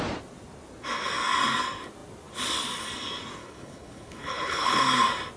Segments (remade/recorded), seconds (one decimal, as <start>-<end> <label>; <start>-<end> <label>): 0.0-3.4 recorded; 3.4-4.8 remade; 4.8-5.4 recorded